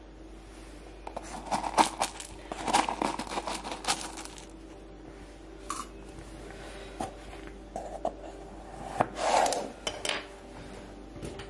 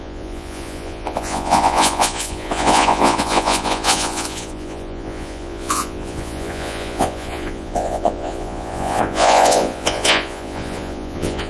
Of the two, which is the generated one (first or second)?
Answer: second